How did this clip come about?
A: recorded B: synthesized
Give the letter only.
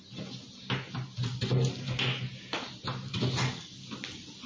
A